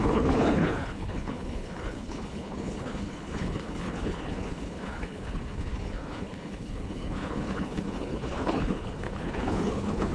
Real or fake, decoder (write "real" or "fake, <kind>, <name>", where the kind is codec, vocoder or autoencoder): fake, codec, HILCodec